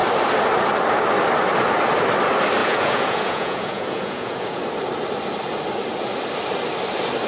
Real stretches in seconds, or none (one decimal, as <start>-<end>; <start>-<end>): 0.0-2.6; 4.6-7.3